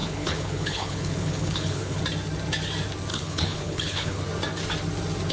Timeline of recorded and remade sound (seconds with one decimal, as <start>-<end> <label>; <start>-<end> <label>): 0.0-2.0 remade; 2.0-3.1 recorded; 3.1-4.2 remade; 4.2-5.3 recorded